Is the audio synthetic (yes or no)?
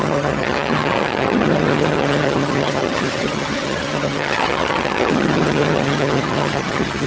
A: yes